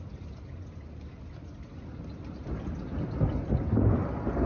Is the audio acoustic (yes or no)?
yes